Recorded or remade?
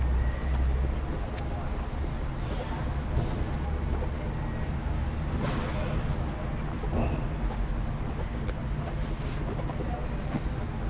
recorded